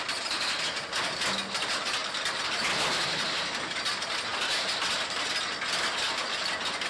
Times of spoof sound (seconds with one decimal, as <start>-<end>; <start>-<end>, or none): 2.0-3.0